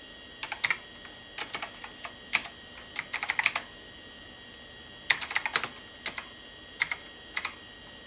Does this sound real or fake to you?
real